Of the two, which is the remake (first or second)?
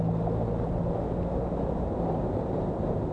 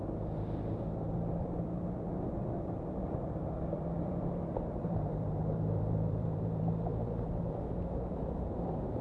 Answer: second